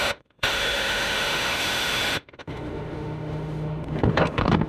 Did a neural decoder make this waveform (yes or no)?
yes